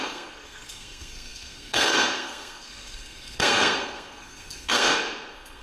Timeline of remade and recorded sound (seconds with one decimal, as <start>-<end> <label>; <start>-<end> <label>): 0.0-5.6 remade